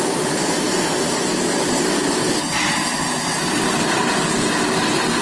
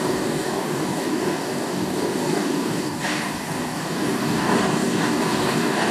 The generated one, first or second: second